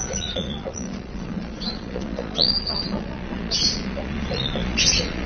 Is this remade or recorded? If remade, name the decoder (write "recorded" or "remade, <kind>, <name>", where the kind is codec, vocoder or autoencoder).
remade, vocoder, Vocos